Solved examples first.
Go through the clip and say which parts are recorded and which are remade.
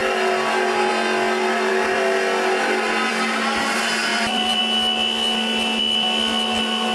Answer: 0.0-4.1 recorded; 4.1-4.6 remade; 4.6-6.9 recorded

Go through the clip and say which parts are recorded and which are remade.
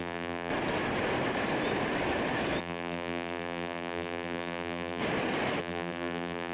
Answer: 0.0-0.5 remade; 0.5-2.6 recorded; 2.6-5.0 remade; 5.0-5.6 recorded; 5.6-6.5 remade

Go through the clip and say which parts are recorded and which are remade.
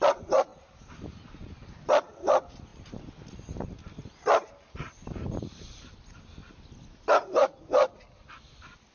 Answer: 0.0-0.5 recorded; 0.5-1.7 remade; 1.7-8.9 recorded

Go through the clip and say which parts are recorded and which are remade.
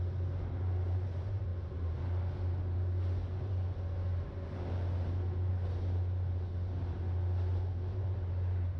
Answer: 0.0-8.8 recorded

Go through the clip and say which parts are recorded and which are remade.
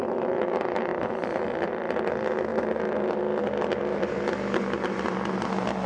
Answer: 0.0-0.9 recorded; 0.9-2.0 remade; 2.0-2.5 recorded; 2.5-3.2 remade; 3.2-3.8 recorded; 3.8-4.3 remade; 4.3-5.9 recorded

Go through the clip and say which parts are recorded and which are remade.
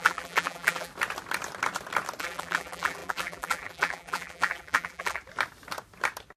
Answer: 0.0-0.9 remade; 0.9-2.2 recorded; 2.2-5.2 remade; 5.2-6.4 recorded